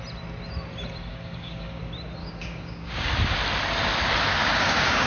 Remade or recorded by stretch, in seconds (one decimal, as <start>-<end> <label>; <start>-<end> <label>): 0.0-1.1 recorded; 1.1-1.8 remade; 1.8-2.2 recorded; 2.2-3.1 remade; 3.1-4.4 recorded; 4.4-5.1 remade